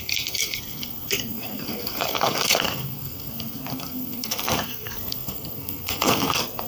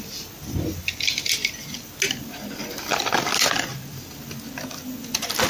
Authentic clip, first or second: second